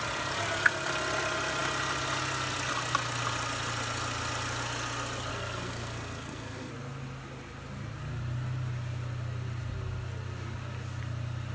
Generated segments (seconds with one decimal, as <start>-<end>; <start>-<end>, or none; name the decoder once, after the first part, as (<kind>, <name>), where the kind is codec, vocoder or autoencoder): 5.3-6.7 (codec, SNAC)